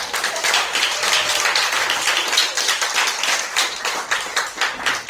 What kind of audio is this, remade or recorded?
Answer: recorded